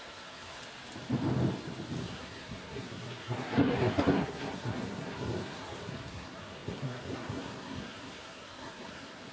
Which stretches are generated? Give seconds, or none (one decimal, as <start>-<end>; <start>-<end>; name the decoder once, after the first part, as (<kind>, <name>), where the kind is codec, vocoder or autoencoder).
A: 0.0-0.6 (codec, SNAC); 2.0-9.3